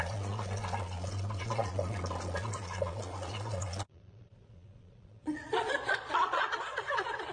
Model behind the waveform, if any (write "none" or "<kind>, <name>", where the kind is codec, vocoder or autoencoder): vocoder, Vocos